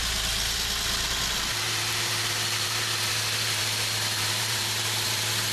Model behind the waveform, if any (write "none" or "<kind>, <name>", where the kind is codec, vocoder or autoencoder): vocoder, BigVGAN v2